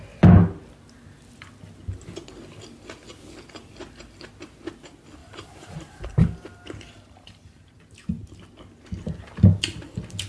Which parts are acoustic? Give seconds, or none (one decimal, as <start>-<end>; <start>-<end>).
0.0-5.2; 7.8-10.3